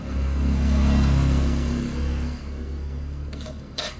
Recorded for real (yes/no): no